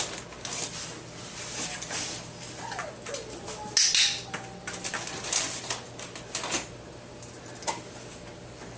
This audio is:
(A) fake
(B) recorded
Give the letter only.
B